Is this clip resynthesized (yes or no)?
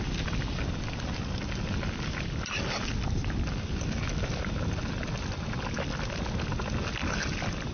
no